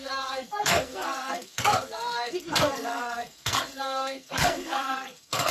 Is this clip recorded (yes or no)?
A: no